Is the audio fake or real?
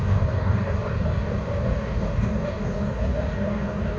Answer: fake